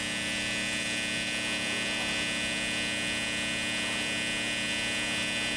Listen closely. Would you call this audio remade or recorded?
recorded